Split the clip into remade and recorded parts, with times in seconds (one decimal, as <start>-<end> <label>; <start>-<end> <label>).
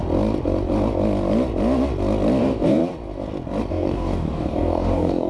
0.0-2.4 recorded; 2.4-2.8 remade; 2.8-3.7 recorded; 3.7-5.3 remade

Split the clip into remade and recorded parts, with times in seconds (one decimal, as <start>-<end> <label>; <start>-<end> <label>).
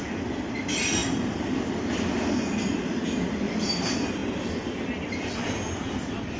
0.0-6.4 recorded